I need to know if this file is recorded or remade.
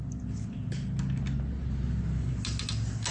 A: recorded